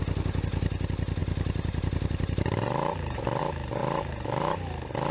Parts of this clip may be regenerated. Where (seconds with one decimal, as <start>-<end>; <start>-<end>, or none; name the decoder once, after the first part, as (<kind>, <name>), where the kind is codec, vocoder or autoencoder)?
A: 1.2-3.4 (vocoder, BigVGAN v2); 3.8-4.4